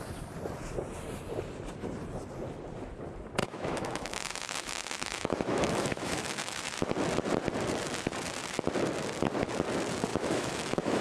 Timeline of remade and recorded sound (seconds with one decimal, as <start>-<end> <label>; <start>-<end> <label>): 0.0-3.4 recorded; 3.4-6.7 remade; 6.7-10.1 recorded; 10.1-11.0 remade